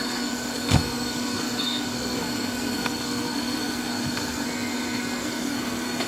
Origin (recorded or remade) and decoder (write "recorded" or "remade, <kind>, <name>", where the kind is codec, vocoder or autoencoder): remade, codec, SNAC